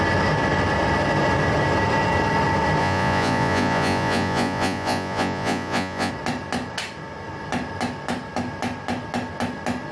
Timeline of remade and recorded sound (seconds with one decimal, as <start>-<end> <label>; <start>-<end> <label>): 0.0-2.8 recorded; 2.8-6.1 remade; 6.1-9.9 recorded